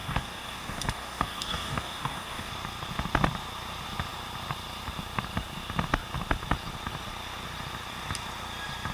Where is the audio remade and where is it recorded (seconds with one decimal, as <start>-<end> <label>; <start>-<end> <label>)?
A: 0.0-2.5 remade; 2.5-8.9 recorded